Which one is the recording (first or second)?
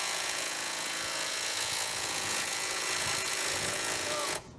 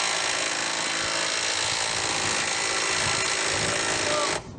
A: second